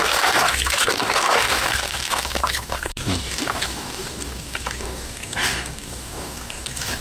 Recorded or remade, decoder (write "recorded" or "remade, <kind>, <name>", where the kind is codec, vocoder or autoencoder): remade, codec, DAC